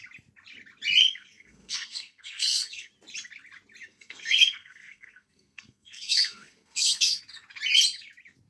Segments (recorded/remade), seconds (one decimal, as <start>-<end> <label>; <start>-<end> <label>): 0.0-1.0 recorded; 1.0-2.9 remade; 2.9-3.9 recorded; 3.9-7.2 remade; 7.2-8.5 recorded